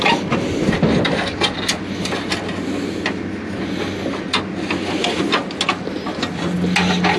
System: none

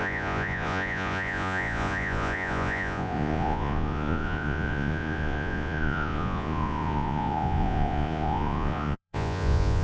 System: vocoder, Vocos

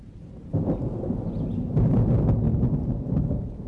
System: none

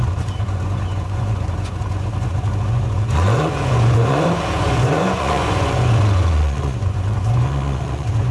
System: vocoder, Vocos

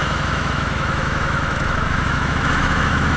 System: autoencoder, DAC-VAE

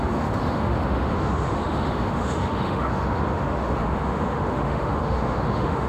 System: autoencoder, DAC-VAE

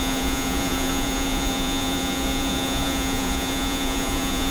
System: vocoder, Vocos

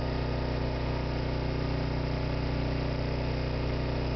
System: none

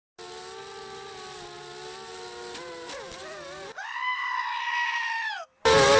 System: none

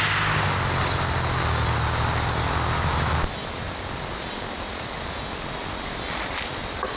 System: none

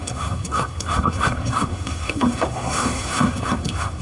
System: codec, SNAC